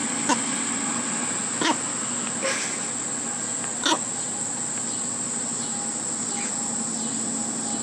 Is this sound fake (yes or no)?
no